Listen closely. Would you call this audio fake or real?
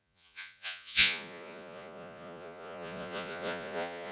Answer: fake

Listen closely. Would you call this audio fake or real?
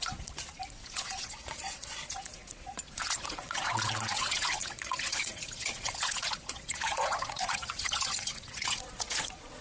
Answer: fake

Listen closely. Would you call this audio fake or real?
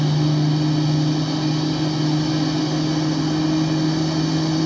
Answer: real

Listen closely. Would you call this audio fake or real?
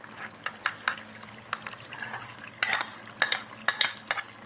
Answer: real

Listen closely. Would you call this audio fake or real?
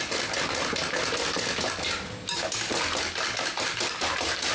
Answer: real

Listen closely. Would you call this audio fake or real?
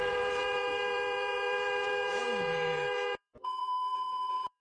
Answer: fake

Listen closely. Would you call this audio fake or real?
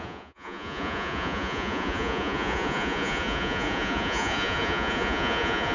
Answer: fake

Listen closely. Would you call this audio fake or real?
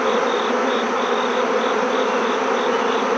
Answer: real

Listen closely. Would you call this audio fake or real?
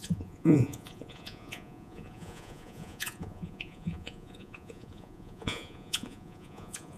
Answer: fake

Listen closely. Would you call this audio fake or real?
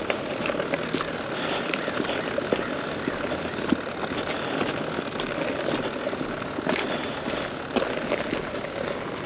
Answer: real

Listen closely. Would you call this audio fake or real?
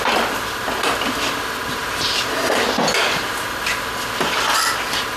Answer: real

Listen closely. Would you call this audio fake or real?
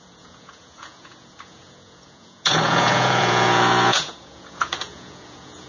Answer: fake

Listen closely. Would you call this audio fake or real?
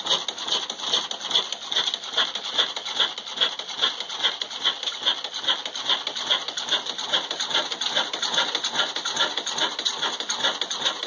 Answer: real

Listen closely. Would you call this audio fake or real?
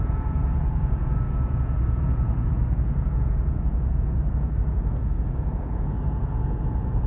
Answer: fake